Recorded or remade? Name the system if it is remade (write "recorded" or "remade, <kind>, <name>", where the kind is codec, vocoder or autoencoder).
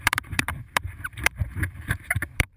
remade, vocoder, BigVGAN v2